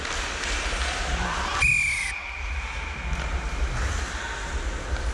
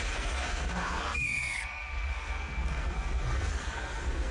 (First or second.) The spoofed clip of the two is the second